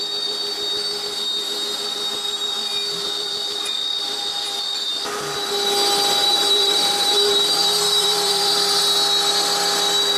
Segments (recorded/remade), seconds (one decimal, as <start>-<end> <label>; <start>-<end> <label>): 0.0-6.2 recorded; 6.2-8.8 remade; 8.8-10.2 recorded